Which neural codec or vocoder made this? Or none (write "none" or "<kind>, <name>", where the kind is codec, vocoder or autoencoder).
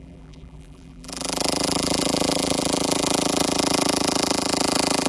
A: vocoder, BigVGAN v2